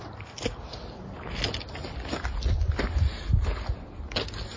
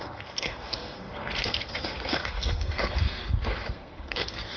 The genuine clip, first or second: first